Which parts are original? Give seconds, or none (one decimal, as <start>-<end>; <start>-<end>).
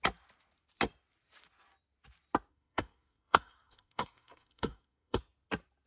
0.0-2.5; 5.2-5.9